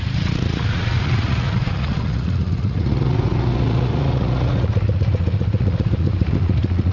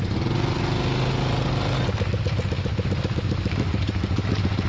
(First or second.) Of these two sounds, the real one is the second